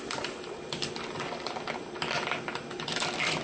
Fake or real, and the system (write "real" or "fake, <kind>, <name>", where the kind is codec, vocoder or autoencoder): fake, vocoder, BigVGAN v2